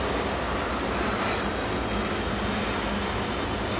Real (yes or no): yes